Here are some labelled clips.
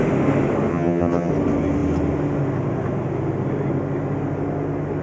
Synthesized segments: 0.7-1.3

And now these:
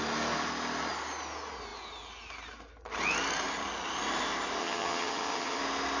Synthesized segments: 4.6-5.6

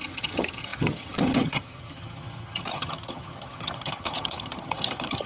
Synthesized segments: 0.0-5.3

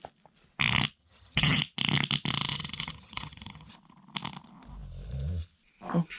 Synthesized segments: 1.0-1.6; 2.5-3.7

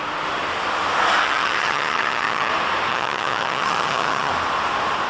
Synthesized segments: 1.2-2.5; 2.9-4.3

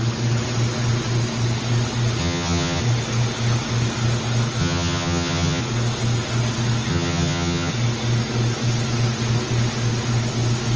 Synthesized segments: 2.2-2.8; 4.6-5.6; 6.9-7.7